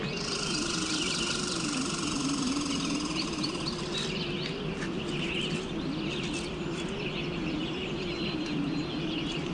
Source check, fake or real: real